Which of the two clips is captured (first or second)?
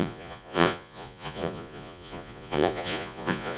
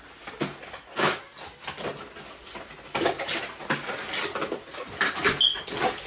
second